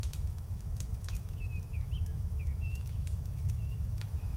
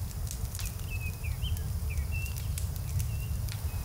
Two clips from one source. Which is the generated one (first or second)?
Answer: first